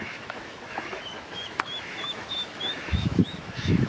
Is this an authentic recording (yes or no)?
no